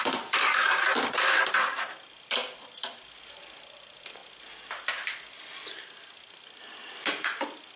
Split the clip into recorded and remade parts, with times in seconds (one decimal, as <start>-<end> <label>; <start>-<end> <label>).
0.0-7.8 recorded